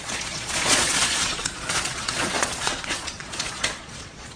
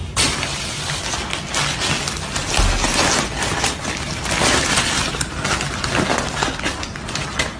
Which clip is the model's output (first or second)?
first